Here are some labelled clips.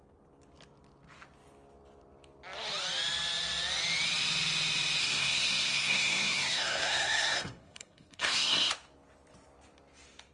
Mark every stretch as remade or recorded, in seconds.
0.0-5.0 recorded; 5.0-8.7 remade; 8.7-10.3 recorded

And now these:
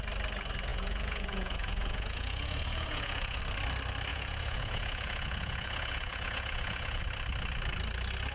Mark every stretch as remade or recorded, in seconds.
0.0-0.7 recorded; 0.7-3.4 remade; 3.4-4.1 recorded; 4.1-7.0 remade; 7.0-8.3 recorded